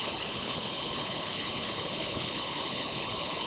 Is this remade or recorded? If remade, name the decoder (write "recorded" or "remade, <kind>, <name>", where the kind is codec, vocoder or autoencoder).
remade, codec, HILCodec